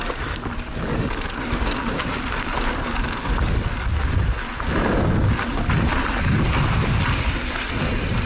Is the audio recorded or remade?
recorded